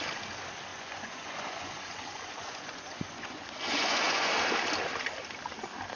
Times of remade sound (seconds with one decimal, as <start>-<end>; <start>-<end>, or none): 0.7-4.3

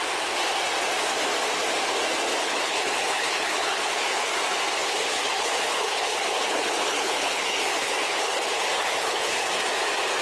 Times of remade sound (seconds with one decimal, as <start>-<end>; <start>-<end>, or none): 2.4-4.3; 4.8-9.5

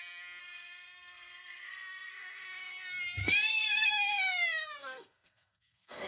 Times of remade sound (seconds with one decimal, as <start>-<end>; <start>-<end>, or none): 0.4-2.1; 3.2-3.9; 4.8-6.1

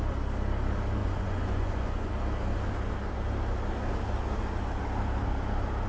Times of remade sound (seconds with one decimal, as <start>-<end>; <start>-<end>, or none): 1.0-2.1